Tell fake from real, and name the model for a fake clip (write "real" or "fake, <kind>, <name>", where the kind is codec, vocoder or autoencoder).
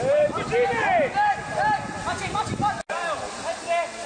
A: real